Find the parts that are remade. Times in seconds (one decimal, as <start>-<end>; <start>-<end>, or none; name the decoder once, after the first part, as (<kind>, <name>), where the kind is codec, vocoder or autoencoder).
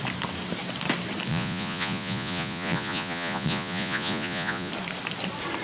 1.3-4.7 (vocoder, Vocos)